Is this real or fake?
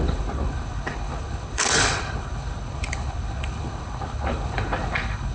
fake